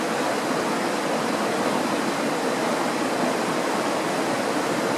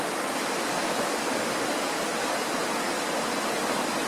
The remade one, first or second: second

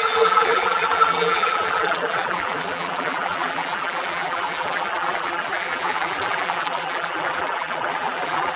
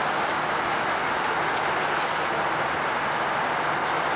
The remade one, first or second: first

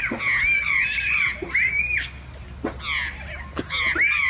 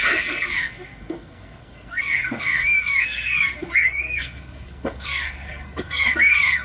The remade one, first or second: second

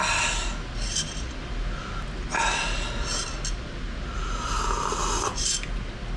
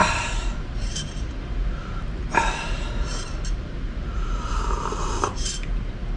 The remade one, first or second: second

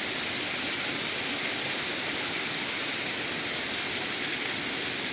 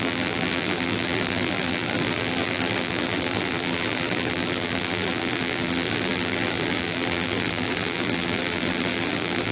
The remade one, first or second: second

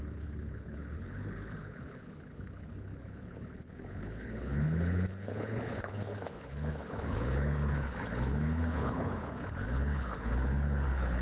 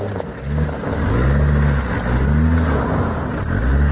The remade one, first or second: first